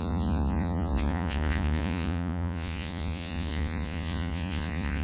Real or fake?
fake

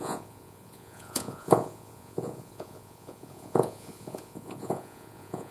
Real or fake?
fake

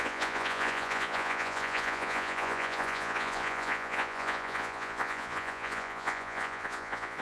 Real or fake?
fake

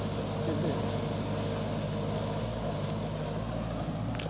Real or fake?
real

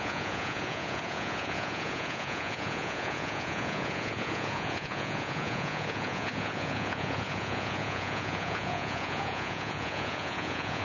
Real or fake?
fake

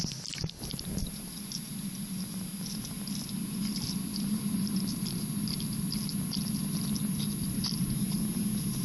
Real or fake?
real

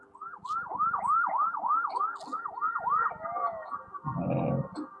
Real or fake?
real